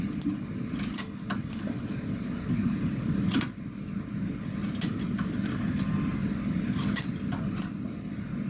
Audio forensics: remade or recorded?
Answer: recorded